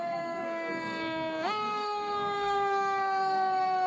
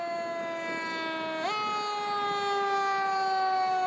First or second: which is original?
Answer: second